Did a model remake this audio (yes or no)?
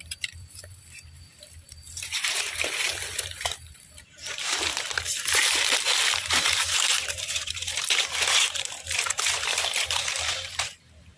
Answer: yes